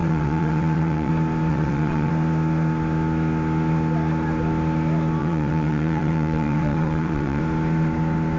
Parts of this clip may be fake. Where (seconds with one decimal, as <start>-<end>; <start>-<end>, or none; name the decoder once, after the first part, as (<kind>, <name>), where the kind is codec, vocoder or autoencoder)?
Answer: 0.0-1.1 (vocoder, WaveNeXt); 1.5-2.1; 5.2-7.4